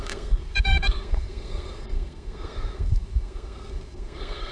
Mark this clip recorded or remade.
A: remade